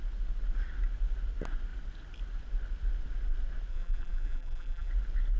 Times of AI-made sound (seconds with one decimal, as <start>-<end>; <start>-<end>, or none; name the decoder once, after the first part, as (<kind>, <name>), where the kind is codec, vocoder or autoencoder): 3.7-4.9 (vocoder, BigVGAN v2)